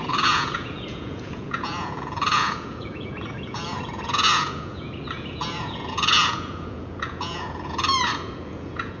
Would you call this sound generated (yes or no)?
yes